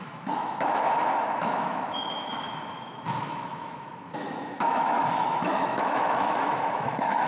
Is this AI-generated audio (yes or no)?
yes